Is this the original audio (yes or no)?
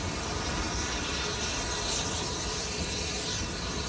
yes